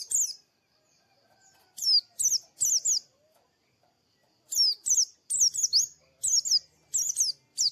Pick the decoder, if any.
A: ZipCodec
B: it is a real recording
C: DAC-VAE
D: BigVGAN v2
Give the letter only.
B